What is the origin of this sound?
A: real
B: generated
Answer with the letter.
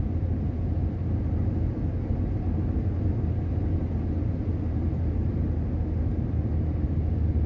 A